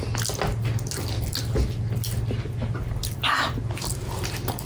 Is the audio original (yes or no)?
yes